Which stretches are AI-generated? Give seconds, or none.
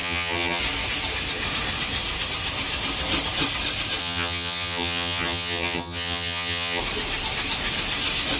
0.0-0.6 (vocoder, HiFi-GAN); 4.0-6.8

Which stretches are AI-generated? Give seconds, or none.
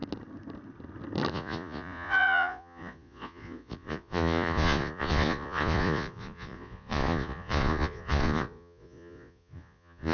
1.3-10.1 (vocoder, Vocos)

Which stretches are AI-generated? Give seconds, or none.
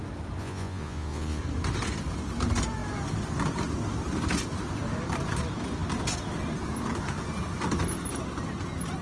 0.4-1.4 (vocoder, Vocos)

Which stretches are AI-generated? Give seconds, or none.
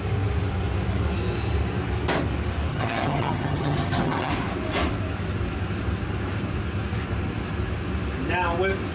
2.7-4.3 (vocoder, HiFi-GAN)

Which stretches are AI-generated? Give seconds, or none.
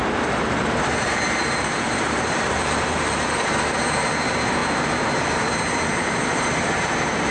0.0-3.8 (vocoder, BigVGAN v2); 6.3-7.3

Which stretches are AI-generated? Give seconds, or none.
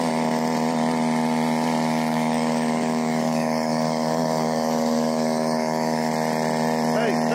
2.1-6.1 (codec, DAC)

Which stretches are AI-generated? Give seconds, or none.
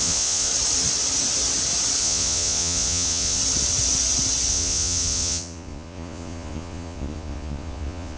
0.0-0.5 (vocoder, Vocos); 2.0-3.4; 4.5-8.2